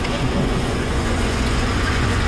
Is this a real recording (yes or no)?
no